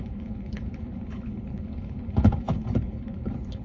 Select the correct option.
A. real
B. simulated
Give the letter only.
B